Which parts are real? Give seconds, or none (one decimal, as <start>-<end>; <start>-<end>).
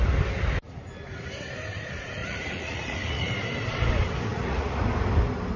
0.0-2.2; 3.3-4.3; 4.8-5.6